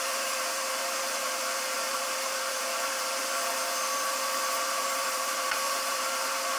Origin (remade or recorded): remade